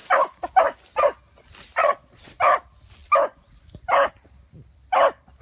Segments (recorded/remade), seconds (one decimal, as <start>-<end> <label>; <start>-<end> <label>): 0.0-1.8 recorded; 1.8-2.4 remade; 2.4-5.4 recorded